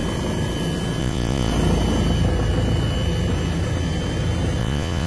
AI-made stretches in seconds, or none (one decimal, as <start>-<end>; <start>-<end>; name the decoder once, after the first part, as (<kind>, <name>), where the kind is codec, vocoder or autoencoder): 1.0-1.5 (vocoder, Vocos); 4.6-5.1